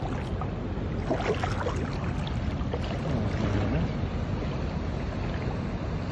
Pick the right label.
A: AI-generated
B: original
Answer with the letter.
B